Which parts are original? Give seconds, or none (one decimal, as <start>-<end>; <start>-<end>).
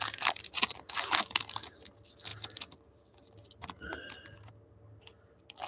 0.0-5.7